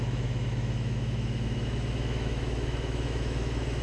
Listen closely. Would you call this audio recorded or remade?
remade